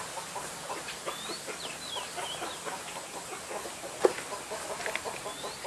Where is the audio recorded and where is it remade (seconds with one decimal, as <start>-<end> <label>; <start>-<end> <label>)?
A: 0.0-5.7 recorded